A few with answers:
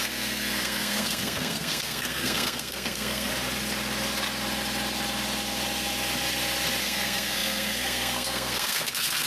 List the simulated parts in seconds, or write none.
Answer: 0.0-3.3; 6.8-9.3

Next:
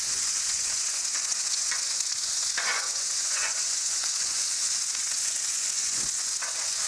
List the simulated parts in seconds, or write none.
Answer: 0.0-6.9

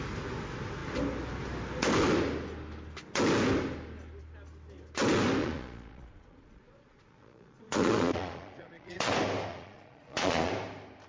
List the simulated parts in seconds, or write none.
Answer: 5.4-9.1; 9.5-10.5

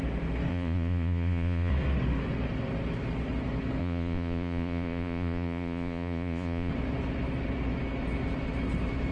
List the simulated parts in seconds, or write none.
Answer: 0.5-1.7; 3.8-6.7

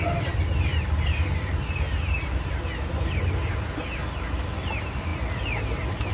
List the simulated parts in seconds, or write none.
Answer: none

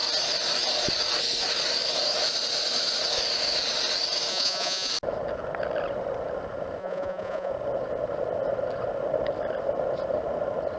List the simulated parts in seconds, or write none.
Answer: 4.3-4.9; 6.8-7.5